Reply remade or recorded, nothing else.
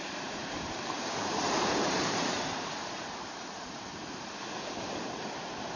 remade